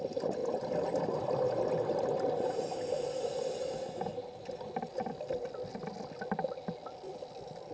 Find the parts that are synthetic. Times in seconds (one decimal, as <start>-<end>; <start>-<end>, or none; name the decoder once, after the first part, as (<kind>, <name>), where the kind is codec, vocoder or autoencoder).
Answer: none